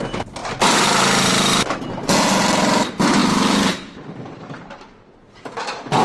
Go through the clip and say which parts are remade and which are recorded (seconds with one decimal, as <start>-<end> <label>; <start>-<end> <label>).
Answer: 0.0-3.2 recorded; 3.2-5.2 remade; 5.2-6.0 recorded